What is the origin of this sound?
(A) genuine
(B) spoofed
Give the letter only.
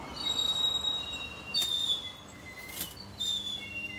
A